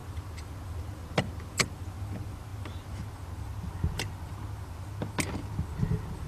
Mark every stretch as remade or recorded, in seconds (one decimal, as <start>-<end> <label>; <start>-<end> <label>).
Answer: 0.0-6.3 recorded